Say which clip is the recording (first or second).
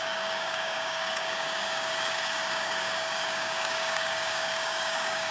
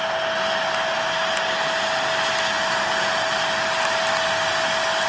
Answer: second